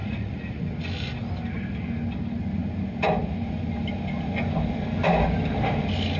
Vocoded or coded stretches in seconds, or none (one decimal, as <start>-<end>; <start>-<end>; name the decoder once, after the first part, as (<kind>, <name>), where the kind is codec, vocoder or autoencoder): 0.0-0.7 (vocoder, Vocos)